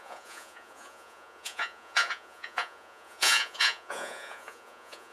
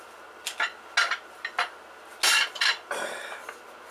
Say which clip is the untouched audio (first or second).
second